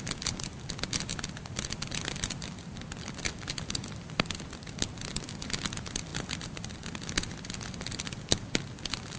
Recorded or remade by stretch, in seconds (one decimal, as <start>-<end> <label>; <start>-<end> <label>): 0.0-1.1 recorded; 1.1-3.3 remade; 3.3-6.1 recorded; 6.1-7.1 remade; 7.1-9.2 recorded